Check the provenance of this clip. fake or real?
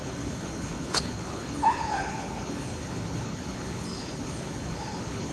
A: fake